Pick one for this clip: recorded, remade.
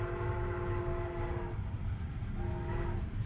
recorded